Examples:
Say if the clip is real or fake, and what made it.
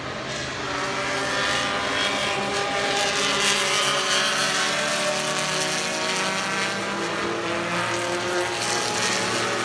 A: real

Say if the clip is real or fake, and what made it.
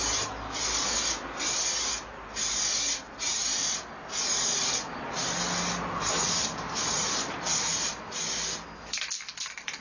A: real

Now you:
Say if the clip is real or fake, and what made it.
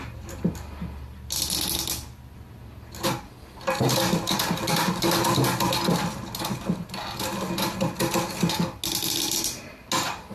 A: real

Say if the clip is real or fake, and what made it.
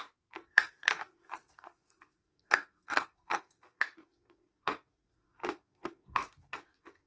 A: fake, codec, SNAC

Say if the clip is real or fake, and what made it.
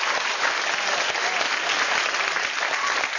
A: real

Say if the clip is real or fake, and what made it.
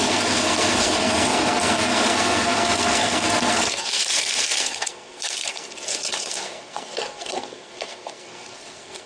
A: fake, codec, SNAC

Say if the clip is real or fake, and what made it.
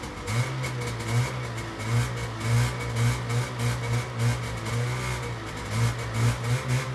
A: real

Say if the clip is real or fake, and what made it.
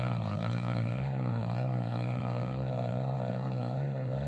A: fake, codec, SNAC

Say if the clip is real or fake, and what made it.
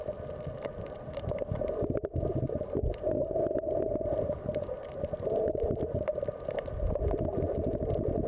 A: real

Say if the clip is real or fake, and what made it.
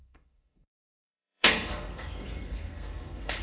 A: fake, codec, SNAC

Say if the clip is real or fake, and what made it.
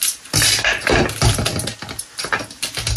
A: real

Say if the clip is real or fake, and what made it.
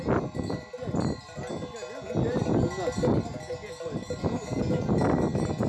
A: real